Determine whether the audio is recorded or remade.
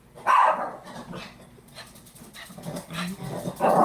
recorded